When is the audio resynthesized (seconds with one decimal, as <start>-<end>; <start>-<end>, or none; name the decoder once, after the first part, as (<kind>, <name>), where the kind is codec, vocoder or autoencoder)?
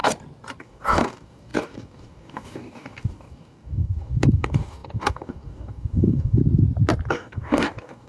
0.6-6.4 (codec, DAC); 7.1-8.1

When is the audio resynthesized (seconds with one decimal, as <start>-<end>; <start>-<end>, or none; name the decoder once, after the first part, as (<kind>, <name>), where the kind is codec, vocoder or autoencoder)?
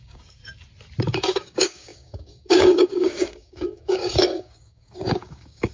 0.0-0.4 (codec, DAC); 1.0-5.7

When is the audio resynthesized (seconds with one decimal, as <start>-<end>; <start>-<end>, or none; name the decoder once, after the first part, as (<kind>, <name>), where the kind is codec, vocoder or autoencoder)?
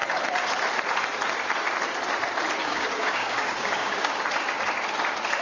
2.6-4.1 (codec, DAC)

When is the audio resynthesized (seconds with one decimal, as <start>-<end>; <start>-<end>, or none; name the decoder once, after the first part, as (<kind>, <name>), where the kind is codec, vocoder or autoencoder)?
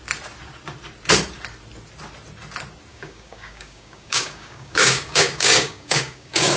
2.9-6.6 (codec, DAC)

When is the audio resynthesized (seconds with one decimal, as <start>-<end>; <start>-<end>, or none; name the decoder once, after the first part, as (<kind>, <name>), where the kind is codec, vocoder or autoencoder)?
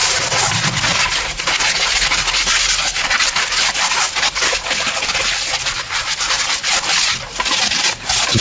none